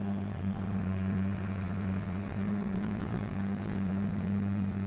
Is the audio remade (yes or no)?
yes